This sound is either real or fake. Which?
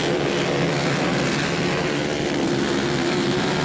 real